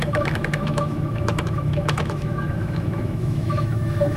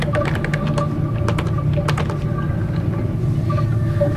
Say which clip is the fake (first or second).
first